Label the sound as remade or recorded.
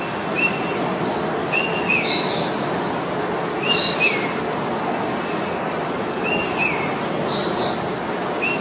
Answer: recorded